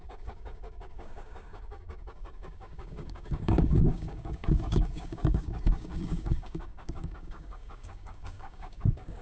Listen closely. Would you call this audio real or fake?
fake